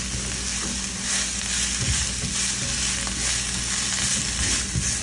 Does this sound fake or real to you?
real